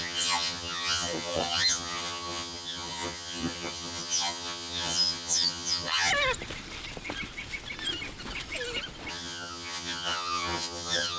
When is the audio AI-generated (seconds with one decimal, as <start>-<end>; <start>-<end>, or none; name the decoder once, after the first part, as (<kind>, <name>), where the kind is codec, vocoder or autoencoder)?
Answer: 0.0-6.1 (vocoder, HiFi-GAN); 9.1-11.2